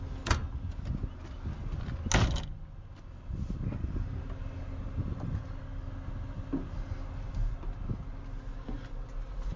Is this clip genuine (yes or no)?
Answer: yes